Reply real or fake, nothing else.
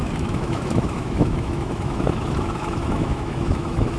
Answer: fake